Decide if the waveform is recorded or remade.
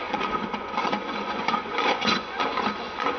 remade